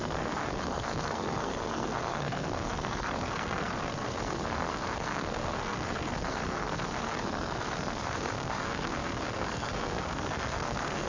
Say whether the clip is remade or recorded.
remade